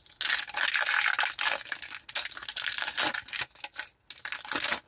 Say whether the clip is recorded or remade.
recorded